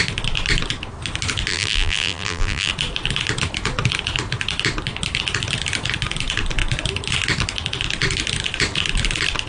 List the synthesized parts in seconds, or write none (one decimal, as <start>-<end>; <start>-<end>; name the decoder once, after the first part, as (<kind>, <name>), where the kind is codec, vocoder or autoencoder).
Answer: 1.5-2.7 (vocoder, BigVGAN v2)